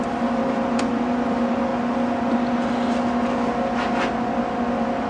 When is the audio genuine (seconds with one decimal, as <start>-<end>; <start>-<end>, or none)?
1.7-5.1